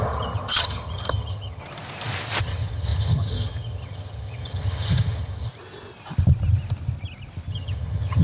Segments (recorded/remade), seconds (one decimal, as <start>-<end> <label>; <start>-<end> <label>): 0.0-1.6 remade; 1.6-2.4 recorded; 2.4-5.5 remade; 5.5-7.5 recorded; 7.5-8.2 remade